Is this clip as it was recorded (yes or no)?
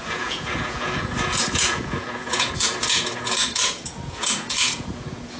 no